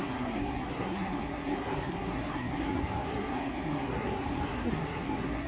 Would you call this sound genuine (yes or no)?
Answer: no